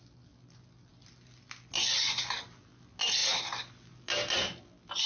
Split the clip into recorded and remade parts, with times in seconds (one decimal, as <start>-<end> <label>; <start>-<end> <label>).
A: 0.0-5.1 recorded